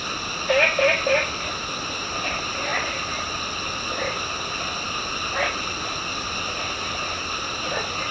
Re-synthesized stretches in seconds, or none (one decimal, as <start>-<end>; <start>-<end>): none